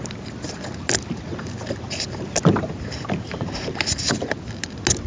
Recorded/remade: recorded